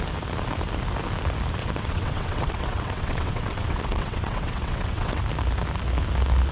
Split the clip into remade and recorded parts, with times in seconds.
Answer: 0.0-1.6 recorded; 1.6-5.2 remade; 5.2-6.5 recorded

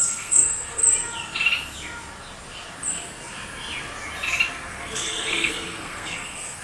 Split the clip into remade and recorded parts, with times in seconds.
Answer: 0.0-0.8 remade; 0.8-4.7 recorded; 4.7-6.6 remade

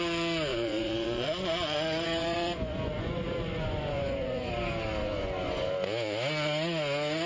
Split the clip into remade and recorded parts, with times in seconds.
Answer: 0.0-0.5 recorded; 0.5-4.5 remade; 4.5-5.0 recorded; 5.0-5.7 remade; 5.7-7.3 recorded

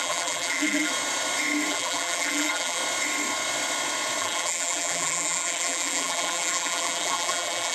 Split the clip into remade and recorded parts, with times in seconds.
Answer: 0.0-0.9 remade; 0.9-1.7 recorded; 1.7-2.8 remade; 2.8-4.2 recorded; 4.2-7.7 remade

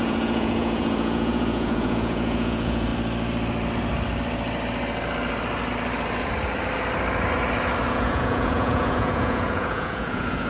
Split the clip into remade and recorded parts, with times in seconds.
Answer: 0.0-2.9 remade; 2.9-7.9 recorded; 7.9-10.5 remade

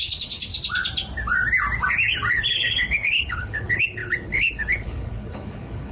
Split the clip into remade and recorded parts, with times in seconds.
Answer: 0.0-0.5 remade; 0.5-2.3 recorded; 2.3-5.9 remade

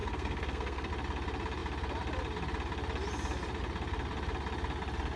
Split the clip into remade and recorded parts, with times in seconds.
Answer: 0.0-0.9 remade; 0.9-5.2 recorded

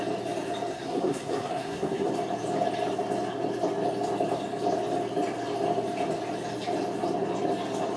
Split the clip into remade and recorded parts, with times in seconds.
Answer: 0.0-0.7 recorded; 0.7-2.1 remade; 2.1-8.0 recorded